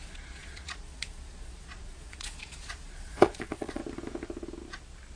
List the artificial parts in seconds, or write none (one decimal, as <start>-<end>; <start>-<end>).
0.0-3.8